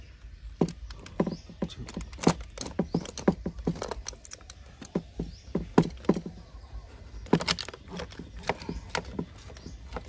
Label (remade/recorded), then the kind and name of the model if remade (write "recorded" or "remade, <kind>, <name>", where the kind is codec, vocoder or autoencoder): recorded